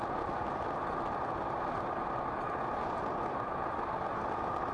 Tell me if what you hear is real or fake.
real